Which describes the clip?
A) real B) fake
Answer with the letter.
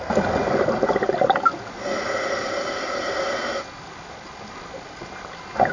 A